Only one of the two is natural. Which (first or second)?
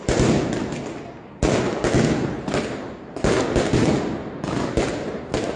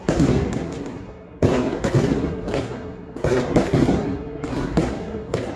first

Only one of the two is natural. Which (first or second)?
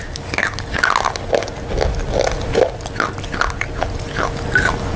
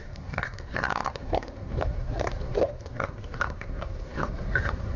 first